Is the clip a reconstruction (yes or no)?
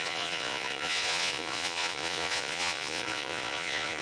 yes